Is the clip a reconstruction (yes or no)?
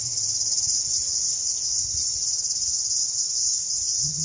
no